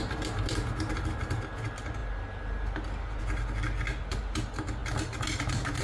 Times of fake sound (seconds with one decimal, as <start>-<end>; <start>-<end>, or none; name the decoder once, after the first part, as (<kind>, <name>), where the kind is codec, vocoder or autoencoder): none